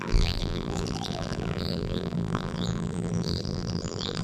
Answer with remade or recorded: remade